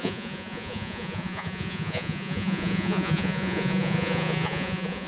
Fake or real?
fake